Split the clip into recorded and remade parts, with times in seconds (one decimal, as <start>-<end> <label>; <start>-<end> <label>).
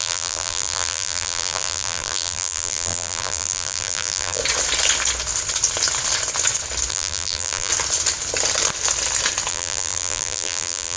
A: 0.0-4.4 remade; 4.4-6.9 recorded; 6.9-7.7 remade; 7.7-9.5 recorded; 9.5-11.0 remade